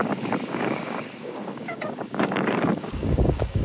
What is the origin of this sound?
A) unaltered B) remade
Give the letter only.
B